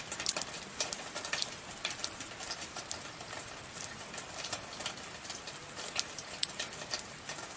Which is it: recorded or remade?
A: remade